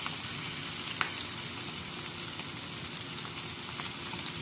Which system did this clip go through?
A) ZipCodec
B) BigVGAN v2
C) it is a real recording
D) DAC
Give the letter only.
C